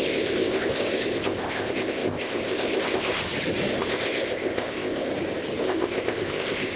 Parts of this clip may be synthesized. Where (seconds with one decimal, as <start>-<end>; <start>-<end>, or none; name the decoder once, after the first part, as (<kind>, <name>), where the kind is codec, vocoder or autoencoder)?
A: 0.0-3.2 (codec, ZipCodec); 3.7-5.1; 5.6-6.8